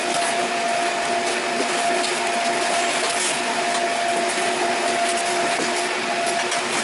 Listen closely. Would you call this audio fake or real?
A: real